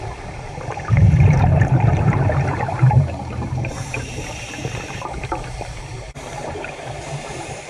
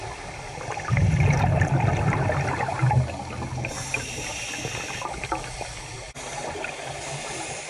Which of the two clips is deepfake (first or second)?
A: first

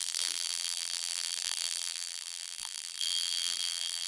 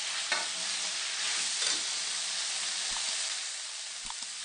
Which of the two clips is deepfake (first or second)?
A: first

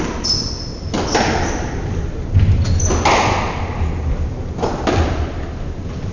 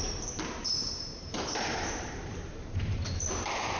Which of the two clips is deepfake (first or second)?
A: second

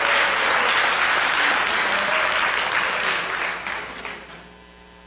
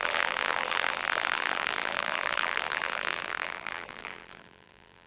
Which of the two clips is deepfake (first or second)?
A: second